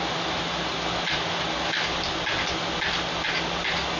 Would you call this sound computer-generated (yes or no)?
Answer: no